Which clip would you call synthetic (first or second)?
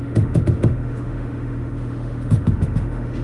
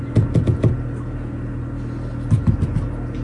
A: first